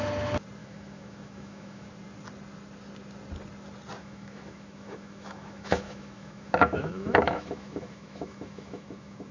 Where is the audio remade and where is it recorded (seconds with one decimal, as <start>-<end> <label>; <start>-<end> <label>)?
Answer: 0.0-0.6 recorded; 0.6-1.9 remade; 1.9-4.0 recorded; 4.0-9.3 remade